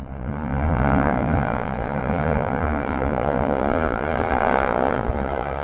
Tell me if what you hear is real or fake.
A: fake